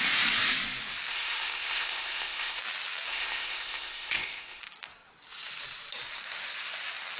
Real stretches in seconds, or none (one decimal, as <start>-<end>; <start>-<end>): 0.0-1.1; 2.6-3.1; 4.6-7.2

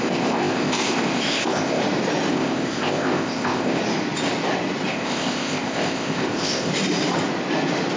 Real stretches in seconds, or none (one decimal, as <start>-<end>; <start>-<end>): 1.8-2.3; 3.8-4.9; 6.7-8.0